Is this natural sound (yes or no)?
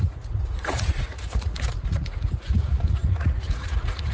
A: no